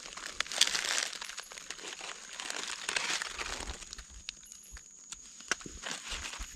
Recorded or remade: recorded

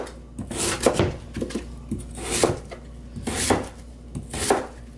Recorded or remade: recorded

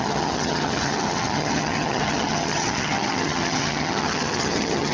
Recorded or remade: remade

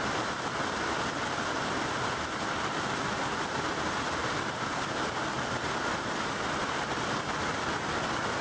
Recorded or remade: recorded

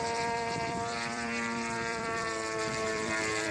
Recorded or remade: remade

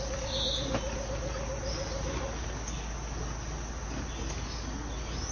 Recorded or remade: recorded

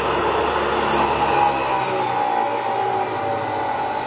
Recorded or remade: recorded